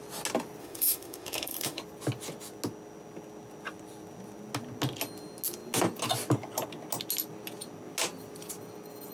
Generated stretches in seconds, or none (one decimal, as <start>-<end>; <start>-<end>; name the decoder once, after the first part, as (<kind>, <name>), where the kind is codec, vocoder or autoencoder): 0.6-1.8 (autoencoder, DAC-VAE)